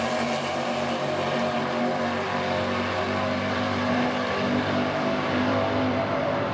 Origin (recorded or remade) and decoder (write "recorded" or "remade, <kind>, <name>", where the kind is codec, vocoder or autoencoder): remade, vocoder, BigVGAN v2